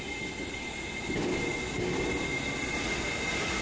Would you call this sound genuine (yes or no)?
yes